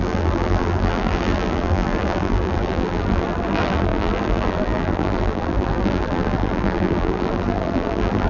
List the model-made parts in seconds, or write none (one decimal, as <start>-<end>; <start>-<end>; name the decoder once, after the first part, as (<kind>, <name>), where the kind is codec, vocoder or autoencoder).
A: 0.0-8.3 (vocoder, BigVGAN v2)